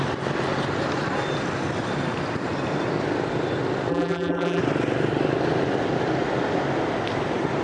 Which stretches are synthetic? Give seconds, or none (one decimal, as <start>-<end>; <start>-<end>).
3.9-4.6